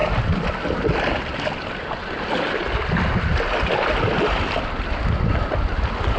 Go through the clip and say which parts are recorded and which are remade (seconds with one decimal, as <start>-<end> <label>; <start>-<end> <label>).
0.0-6.2 recorded